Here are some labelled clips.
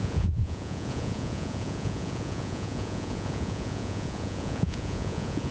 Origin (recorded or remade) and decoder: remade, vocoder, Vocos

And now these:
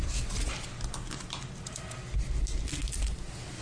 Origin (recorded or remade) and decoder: recorded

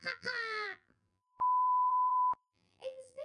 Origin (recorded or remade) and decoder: remade, vocoder, BigVGAN v2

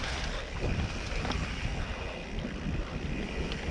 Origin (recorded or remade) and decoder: remade, vocoder, BigVGAN v2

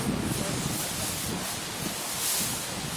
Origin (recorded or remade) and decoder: recorded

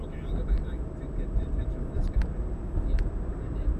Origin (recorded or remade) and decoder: remade, vocoder, BigVGAN v2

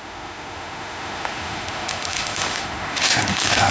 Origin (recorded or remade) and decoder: remade, autoencoder, DAC-VAE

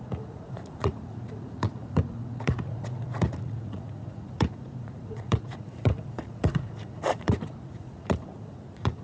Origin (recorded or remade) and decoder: remade, vocoder, Vocos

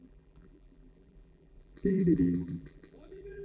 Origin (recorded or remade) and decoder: remade, vocoder, BigVGAN v2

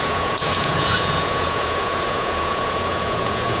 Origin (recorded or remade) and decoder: remade, vocoder, Vocos